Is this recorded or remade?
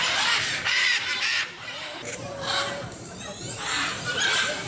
remade